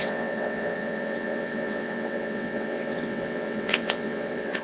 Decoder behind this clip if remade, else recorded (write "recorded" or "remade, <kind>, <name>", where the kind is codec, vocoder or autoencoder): remade, vocoder, WaveNeXt